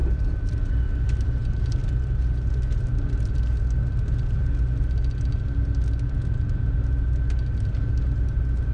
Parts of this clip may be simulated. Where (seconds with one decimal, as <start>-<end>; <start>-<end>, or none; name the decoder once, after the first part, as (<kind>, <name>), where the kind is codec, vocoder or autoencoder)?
0.0-0.6 (vocoder, BigVGAN v2)

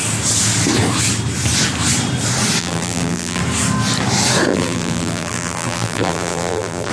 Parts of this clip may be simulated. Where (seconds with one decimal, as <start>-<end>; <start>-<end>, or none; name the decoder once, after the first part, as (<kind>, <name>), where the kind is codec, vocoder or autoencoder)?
2.6-3.4 (vocoder, BigVGAN v2); 4.5-6.9

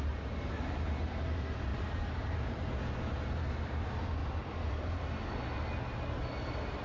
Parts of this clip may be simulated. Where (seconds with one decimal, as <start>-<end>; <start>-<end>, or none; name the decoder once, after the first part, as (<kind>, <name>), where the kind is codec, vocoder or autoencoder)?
1.7-2.8 (vocoder, BigVGAN v2); 4.2-5.0